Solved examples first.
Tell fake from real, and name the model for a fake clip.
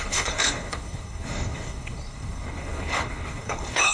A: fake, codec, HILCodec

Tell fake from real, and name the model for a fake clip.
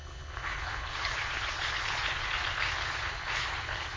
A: fake, codec, HILCodec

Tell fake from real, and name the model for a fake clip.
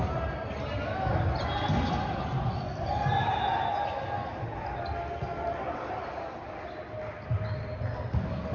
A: real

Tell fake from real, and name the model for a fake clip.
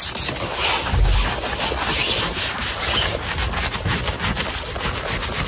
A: real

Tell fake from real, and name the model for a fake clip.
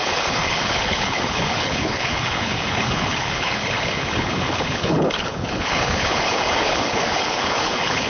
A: fake, codec, HILCodec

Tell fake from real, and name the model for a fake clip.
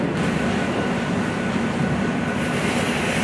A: real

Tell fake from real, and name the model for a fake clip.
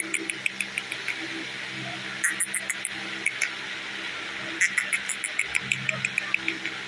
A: real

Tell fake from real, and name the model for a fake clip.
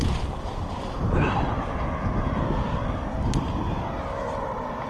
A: real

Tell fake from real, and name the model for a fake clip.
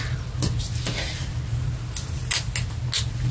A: real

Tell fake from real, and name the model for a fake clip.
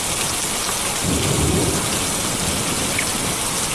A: real